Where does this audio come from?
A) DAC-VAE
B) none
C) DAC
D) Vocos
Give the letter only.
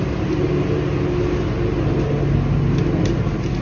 B